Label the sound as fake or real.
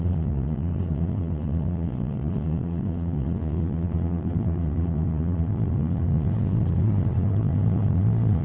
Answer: fake